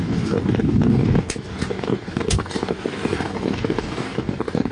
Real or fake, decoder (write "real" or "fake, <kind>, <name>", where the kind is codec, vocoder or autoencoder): fake, codec, DAC